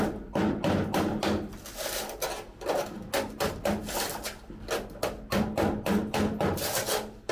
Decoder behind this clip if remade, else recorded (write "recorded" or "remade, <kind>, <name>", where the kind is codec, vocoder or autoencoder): recorded